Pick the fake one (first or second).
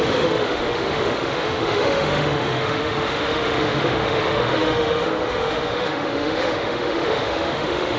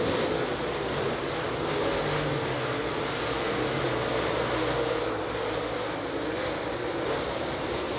first